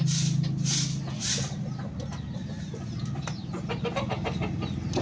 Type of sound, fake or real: real